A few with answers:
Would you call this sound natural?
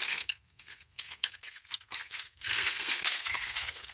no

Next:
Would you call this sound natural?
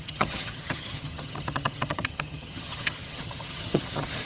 no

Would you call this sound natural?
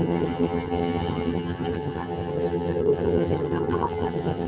no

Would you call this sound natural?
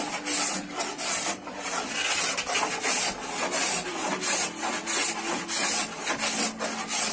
yes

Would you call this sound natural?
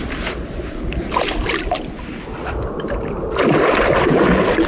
yes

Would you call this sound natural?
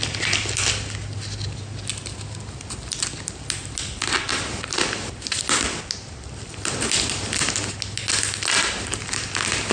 yes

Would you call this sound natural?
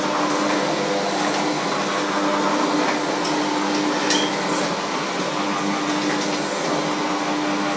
yes